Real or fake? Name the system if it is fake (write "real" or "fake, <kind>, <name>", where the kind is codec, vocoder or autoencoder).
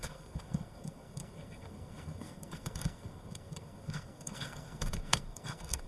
fake, codec, SNAC